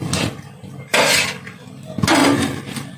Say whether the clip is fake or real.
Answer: real